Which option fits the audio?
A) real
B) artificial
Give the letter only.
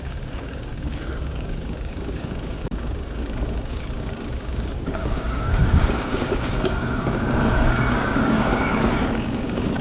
B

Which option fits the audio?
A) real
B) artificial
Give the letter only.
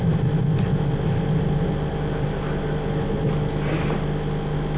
A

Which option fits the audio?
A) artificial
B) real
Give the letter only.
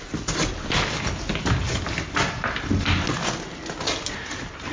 B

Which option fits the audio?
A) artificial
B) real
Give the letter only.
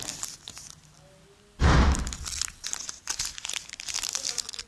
B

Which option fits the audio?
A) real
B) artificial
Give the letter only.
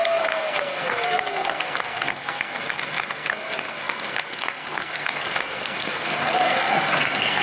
B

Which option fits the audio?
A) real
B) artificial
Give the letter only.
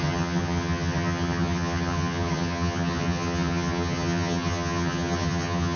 B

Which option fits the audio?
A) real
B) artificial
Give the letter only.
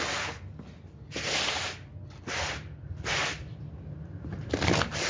A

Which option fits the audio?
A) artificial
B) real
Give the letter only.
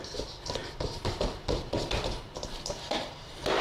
A